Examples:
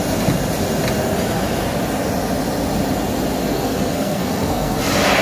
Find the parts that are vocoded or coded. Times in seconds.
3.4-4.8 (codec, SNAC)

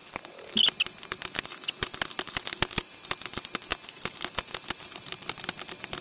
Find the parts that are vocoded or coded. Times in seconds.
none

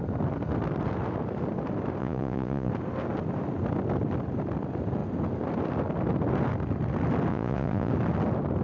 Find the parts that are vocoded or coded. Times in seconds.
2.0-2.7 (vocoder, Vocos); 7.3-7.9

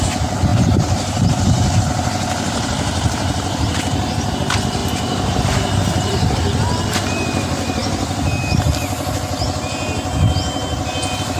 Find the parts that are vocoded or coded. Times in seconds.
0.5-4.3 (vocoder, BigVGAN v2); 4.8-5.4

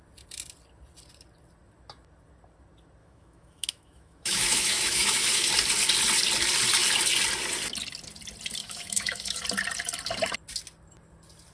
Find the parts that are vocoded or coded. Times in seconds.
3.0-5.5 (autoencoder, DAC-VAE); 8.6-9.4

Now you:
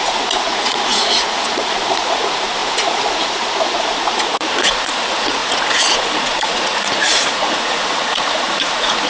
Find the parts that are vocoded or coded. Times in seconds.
0.0-9.1 (vocoder, Vocos)